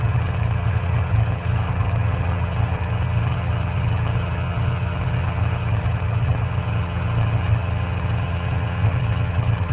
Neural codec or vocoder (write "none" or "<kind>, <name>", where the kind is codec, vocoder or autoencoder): vocoder, HiFi-GAN